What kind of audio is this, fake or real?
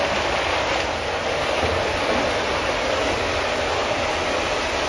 real